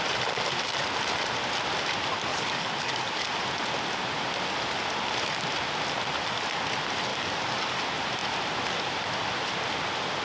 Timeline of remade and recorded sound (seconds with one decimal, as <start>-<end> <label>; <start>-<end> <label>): 0.0-2.3 recorded; 2.3-3.3 remade; 3.3-7.1 recorded; 7.1-7.8 remade; 7.8-10.2 recorded